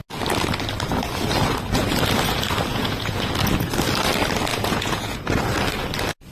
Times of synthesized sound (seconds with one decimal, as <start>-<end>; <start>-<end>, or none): 2.7-3.3; 4.5-5.3